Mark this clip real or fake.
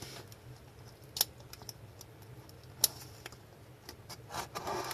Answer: real